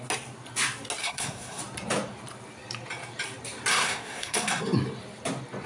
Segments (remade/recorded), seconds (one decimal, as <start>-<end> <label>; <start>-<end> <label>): 0.0-1.0 recorded; 1.0-1.6 remade; 1.6-3.7 recorded; 3.7-4.6 remade; 4.6-5.7 recorded